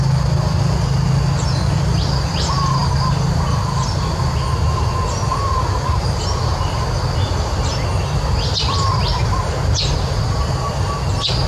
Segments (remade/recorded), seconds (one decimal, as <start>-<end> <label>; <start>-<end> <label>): 0.0-11.5 recorded